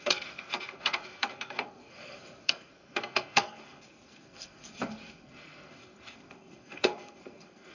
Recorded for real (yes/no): no